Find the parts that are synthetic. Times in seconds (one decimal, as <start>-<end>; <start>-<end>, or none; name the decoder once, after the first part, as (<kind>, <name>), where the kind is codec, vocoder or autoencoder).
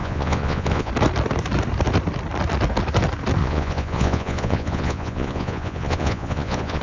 0.0-0.9 (vocoder, Vocos); 3.4-6.8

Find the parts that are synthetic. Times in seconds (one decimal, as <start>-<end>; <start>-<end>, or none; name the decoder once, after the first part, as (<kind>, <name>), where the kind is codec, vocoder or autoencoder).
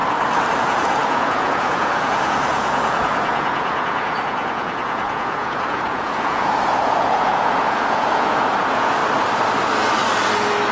0.6-9.0 (vocoder, Vocos)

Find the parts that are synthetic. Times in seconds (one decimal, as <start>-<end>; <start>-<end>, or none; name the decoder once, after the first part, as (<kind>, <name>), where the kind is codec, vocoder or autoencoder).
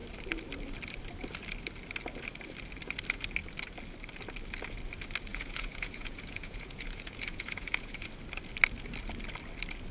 5.3-8.1 (vocoder, Vocos)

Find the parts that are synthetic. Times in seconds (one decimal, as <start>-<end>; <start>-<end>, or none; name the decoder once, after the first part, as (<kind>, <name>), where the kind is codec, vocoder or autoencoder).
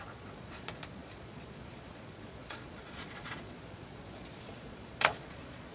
0.0-5.7 (vocoder, Vocos)